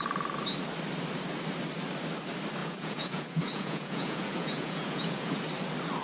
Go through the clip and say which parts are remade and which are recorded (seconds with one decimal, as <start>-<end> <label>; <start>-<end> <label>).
0.0-2.6 recorded; 2.6-5.4 remade; 5.4-6.0 recorded